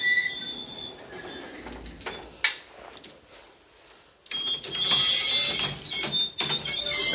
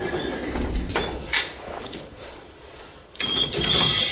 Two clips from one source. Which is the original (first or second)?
first